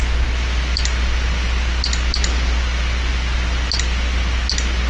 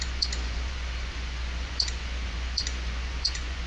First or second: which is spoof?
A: second